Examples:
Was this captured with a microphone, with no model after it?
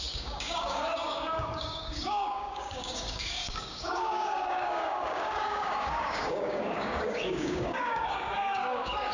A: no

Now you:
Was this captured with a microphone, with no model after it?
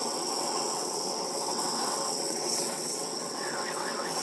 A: no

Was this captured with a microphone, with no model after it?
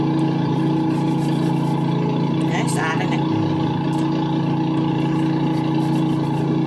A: yes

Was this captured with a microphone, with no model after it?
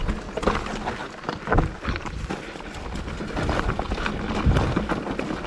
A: yes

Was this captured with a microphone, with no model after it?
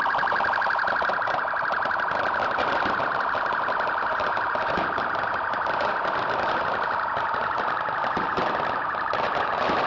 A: no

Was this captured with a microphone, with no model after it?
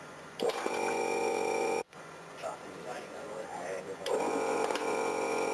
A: no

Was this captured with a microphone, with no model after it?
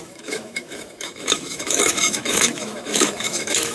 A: no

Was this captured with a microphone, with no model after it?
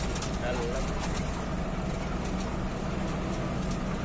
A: yes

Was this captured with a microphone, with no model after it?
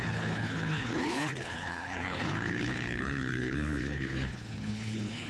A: no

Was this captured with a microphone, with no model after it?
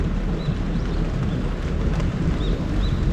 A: yes